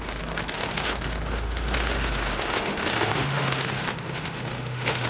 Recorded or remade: remade